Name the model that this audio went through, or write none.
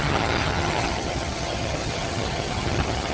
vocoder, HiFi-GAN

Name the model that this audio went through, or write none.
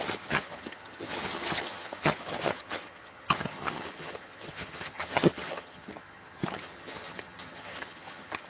vocoder, HiFi-GAN